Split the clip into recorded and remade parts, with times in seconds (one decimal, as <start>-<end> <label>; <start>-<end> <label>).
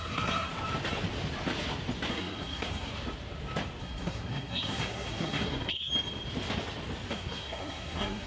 0.0-0.5 remade; 0.5-2.1 recorded; 2.1-2.9 remade; 2.9-3.8 recorded; 3.8-5.9 remade; 5.9-7.1 recorded; 7.1-8.3 remade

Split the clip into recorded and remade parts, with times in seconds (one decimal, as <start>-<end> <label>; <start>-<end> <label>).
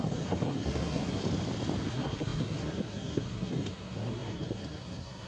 0.0-1.2 remade; 1.2-1.9 recorded; 1.9-5.3 remade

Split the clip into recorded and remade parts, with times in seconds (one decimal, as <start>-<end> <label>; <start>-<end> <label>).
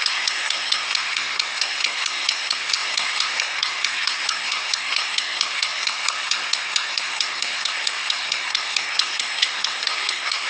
0.0-10.5 remade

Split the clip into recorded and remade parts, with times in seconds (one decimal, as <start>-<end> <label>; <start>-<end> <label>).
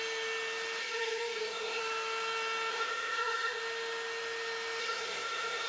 0.0-0.8 recorded; 0.8-1.8 remade; 1.8-2.7 recorded; 2.7-3.6 remade; 3.6-4.8 recorded; 4.8-5.7 remade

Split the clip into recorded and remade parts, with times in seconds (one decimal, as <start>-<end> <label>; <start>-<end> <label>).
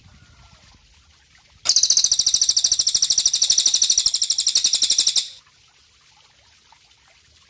0.0-7.5 recorded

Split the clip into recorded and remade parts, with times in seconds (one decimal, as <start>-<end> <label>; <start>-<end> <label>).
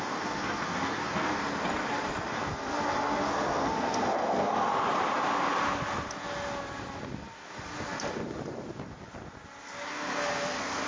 0.0-1.5 remade; 1.5-2.3 recorded; 2.3-4.7 remade; 4.7-9.9 recorded; 9.9-10.9 remade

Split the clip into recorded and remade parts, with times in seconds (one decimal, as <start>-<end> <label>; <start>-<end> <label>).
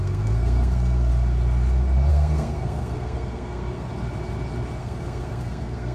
0.0-1.1 remade; 1.1-2.1 recorded; 2.1-3.9 remade; 3.9-4.8 recorded; 4.8-5.9 remade